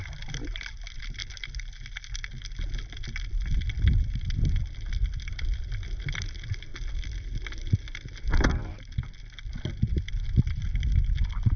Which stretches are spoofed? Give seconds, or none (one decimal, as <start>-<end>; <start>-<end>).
none